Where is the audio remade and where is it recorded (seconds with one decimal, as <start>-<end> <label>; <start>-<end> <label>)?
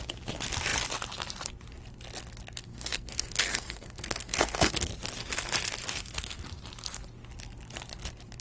0.0-2.7 recorded; 2.7-4.7 remade; 4.7-5.8 recorded; 5.8-6.4 remade; 6.4-8.4 recorded